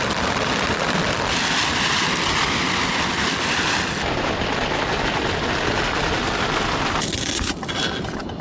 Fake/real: real